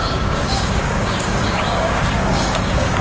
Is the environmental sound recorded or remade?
remade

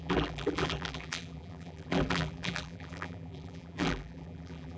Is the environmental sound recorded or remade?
remade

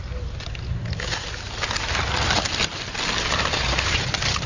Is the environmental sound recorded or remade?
recorded